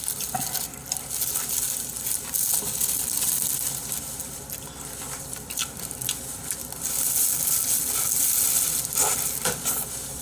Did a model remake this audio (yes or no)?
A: no